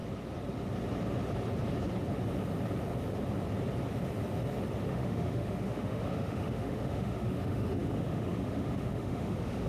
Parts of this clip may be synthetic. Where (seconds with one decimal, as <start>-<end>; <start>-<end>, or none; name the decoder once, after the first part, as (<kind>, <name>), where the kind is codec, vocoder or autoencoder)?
4.9-9.7 (autoencoder, DAC-VAE)